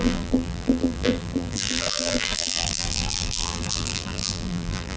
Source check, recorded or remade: remade